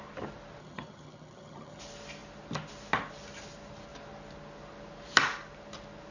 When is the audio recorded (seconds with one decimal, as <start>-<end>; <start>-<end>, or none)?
0.0-0.6; 1.8-6.1